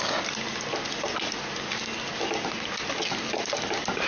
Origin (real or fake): real